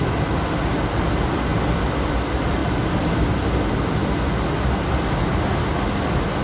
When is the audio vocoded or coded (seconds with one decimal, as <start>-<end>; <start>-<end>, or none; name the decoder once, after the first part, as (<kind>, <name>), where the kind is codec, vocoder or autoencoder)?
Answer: none